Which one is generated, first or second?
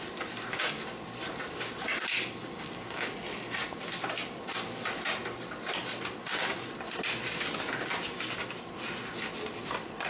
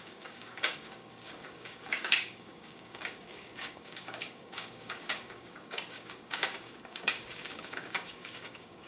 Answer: second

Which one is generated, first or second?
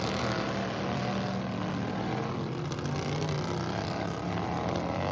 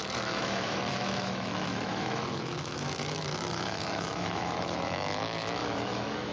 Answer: second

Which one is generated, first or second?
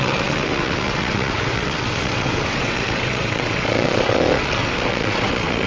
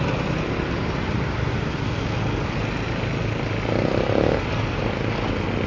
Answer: first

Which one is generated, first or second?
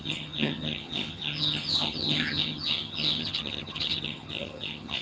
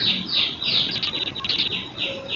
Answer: first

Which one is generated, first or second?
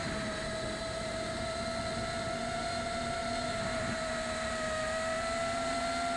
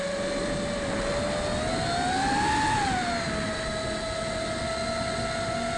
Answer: first